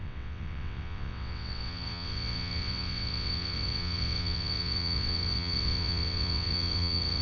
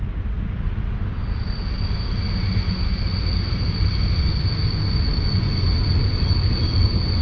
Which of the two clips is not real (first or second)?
first